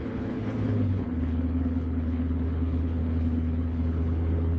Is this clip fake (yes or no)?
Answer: yes